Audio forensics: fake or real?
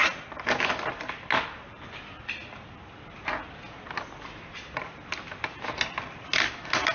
real